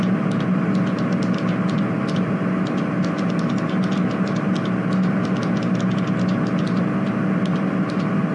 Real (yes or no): yes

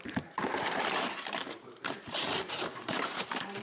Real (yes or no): no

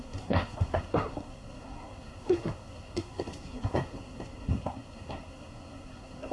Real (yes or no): no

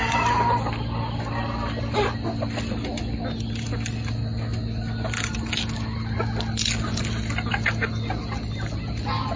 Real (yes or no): yes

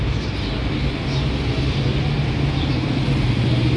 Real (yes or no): yes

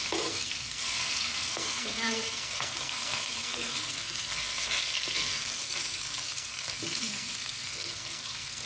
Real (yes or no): no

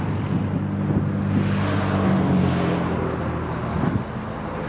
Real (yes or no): yes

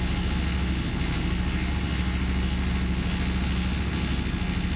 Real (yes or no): yes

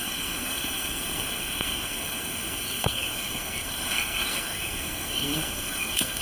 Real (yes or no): no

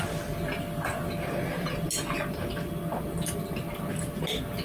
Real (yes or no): yes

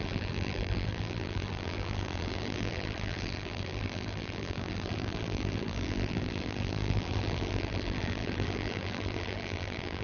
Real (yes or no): no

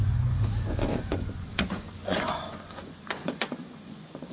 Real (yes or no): no